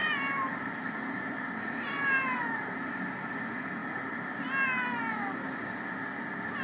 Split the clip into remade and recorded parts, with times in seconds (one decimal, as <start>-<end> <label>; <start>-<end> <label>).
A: 0.0-2.8 remade; 2.8-6.6 recorded